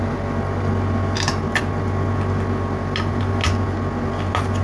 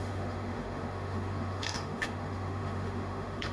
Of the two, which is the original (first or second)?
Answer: first